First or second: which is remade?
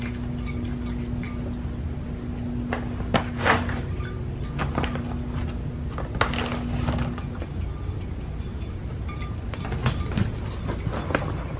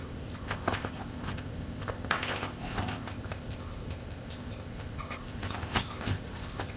second